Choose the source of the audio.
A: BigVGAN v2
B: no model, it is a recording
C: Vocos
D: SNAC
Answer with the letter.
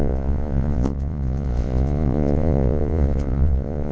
C